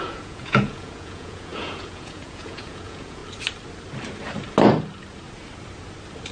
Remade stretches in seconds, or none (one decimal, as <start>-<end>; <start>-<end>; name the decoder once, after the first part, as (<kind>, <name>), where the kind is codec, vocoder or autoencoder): 0.0-3.2 (vocoder, Vocos)